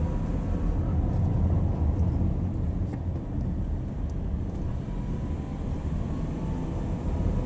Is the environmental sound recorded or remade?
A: recorded